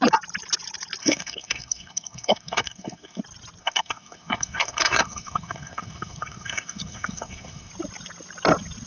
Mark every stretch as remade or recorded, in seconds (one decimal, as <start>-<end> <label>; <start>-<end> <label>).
0.0-1.0 recorded; 1.0-3.2 remade; 3.2-3.6 recorded; 3.6-7.7 remade; 7.7-8.9 recorded